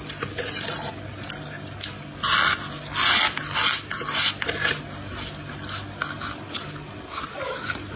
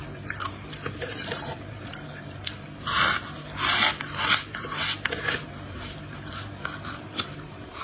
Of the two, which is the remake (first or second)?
second